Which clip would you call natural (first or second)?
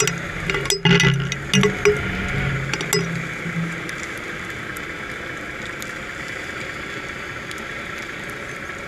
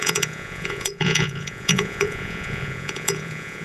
first